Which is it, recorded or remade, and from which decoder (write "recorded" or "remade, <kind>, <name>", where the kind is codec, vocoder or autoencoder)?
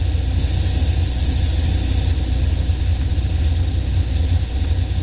recorded